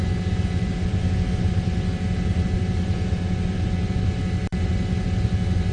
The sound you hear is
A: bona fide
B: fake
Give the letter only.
A